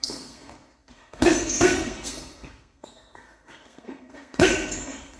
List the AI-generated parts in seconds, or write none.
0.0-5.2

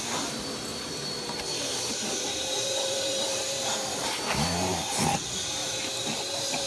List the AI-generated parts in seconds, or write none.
0.7-4.7; 5.6-6.7